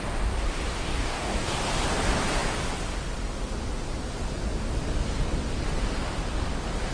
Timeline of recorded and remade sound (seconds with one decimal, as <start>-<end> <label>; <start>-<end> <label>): 0.0-0.8 recorded; 0.8-1.5 remade; 1.5-6.9 recorded